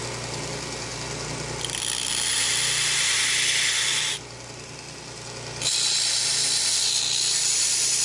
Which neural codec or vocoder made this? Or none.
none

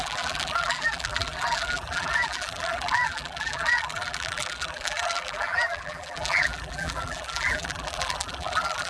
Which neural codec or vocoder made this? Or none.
vocoder, BigVGAN v2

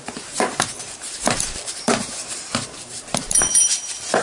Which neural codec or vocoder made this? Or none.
vocoder, BigVGAN v2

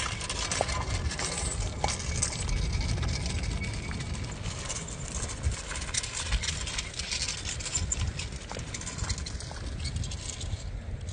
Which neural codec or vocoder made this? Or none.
none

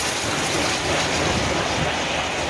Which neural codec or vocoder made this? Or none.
none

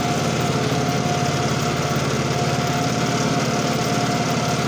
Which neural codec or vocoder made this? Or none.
none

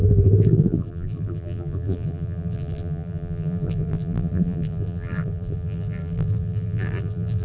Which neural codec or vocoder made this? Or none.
vocoder, BigVGAN v2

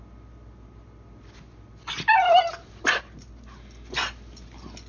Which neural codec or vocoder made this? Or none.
none